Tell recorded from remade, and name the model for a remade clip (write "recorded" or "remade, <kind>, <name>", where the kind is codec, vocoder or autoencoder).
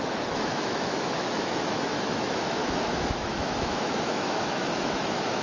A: remade, autoencoder, DAC-VAE